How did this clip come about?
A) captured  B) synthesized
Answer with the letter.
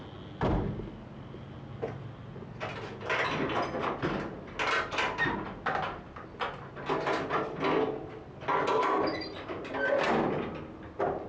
A